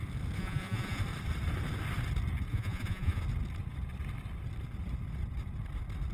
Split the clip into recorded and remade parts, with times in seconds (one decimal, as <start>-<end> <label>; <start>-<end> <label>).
0.0-0.4 recorded; 0.4-1.0 remade; 1.0-2.5 recorded; 2.5-3.2 remade; 3.2-6.1 recorded